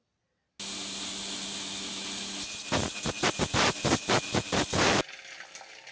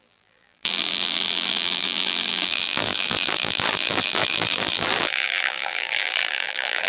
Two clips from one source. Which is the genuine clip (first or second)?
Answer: first